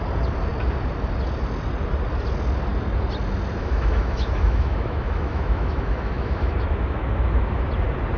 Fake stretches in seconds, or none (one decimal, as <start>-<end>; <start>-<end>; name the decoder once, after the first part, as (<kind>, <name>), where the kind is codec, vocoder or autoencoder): 3.6-7.7 (autoencoder, DAC-VAE)